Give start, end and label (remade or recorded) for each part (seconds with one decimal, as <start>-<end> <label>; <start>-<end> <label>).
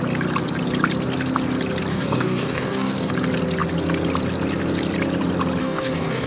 0.0-1.9 recorded; 1.9-3.1 remade; 3.1-5.6 recorded; 5.6-6.3 remade